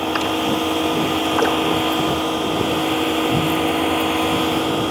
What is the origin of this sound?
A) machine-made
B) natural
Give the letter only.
B